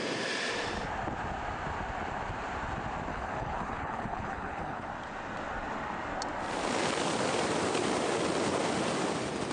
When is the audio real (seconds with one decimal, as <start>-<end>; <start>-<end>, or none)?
0.0-3.1; 4.9-9.5